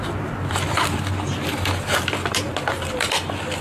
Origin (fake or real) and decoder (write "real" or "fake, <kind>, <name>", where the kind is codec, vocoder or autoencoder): real